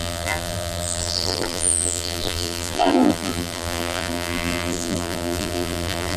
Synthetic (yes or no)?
yes